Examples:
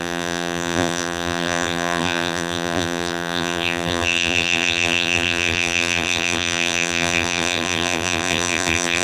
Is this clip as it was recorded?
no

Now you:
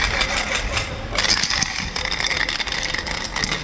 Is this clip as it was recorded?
yes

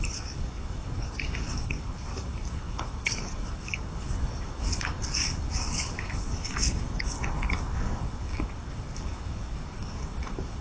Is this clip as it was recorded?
no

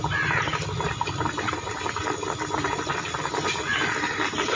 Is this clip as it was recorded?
yes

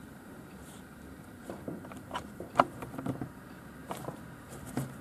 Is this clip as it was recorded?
no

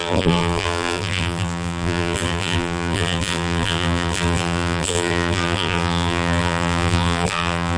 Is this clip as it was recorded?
no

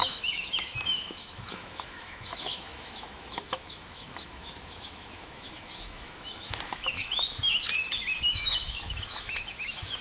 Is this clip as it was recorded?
no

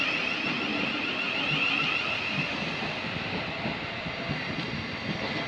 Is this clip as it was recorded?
yes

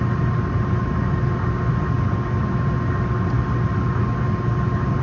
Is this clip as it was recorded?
yes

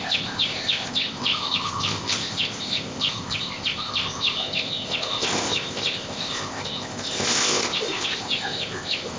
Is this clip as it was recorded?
no